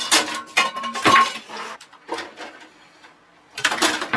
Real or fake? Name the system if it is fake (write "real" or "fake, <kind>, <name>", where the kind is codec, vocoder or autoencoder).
real